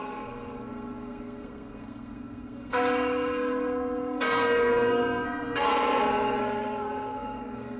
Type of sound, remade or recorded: remade